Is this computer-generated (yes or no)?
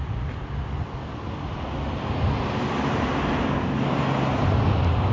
no